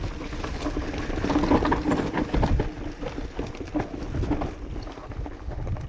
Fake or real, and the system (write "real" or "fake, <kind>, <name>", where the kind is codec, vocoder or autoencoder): real